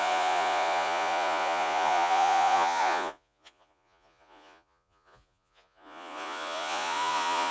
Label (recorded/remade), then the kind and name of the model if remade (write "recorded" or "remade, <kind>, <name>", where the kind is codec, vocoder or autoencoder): remade, vocoder, Vocos